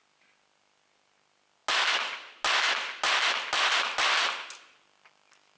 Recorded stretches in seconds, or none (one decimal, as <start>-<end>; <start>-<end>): 0.0-5.6